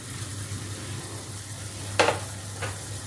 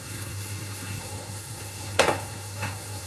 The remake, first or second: second